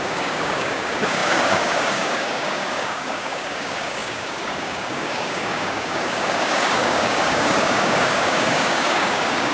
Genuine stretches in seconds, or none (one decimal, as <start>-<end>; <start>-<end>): none